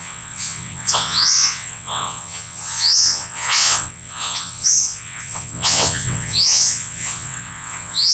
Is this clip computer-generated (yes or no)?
yes